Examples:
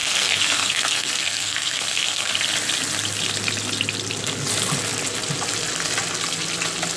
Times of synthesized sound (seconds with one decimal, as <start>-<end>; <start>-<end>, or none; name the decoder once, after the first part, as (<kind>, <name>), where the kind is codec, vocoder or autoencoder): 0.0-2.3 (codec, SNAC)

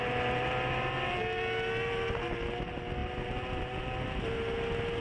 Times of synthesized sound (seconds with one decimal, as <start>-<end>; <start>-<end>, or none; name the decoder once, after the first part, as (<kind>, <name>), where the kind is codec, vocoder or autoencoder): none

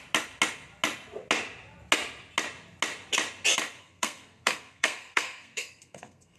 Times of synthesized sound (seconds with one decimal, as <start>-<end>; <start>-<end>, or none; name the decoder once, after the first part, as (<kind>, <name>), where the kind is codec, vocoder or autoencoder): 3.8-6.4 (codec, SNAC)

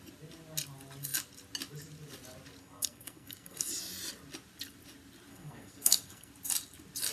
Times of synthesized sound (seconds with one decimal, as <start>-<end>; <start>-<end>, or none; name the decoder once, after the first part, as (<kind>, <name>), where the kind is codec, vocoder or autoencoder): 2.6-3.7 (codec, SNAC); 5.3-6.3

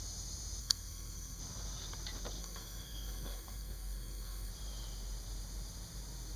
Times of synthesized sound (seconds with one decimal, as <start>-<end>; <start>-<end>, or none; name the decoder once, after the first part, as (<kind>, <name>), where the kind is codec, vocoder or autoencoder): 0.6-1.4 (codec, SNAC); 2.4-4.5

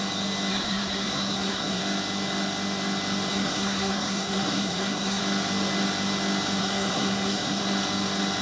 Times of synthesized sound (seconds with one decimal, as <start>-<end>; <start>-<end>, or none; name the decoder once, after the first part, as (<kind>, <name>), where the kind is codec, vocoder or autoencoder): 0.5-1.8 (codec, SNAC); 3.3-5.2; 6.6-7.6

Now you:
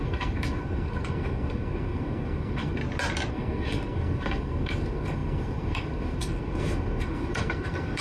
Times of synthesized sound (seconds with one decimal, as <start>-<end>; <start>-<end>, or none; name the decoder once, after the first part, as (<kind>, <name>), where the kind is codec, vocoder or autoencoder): 0.0-2.8 (codec, SNAC); 3.3-8.0